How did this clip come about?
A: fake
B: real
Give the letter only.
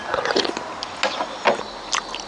B